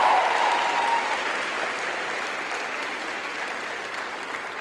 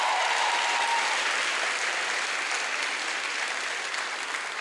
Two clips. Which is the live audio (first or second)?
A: second